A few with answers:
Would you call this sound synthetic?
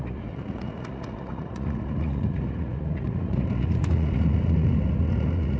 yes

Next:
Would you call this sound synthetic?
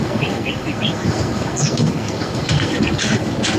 yes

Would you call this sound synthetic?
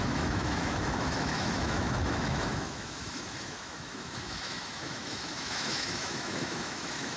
yes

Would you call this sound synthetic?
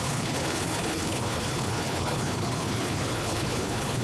yes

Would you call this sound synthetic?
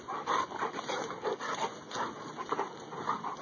no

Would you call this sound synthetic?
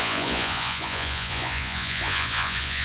yes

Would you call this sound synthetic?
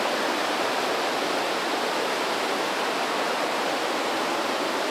no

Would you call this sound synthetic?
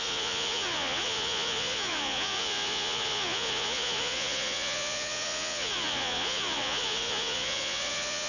yes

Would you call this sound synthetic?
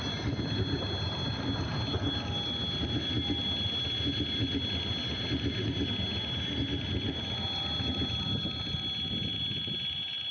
no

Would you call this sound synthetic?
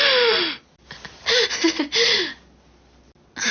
no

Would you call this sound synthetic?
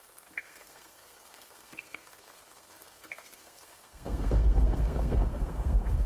yes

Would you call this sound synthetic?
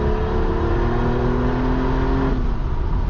no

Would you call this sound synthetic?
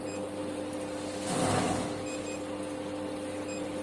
no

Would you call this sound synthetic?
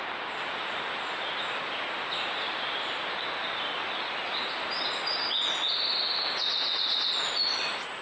no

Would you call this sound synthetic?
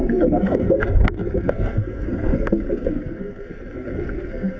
yes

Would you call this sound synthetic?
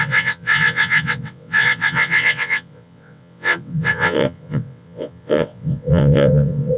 yes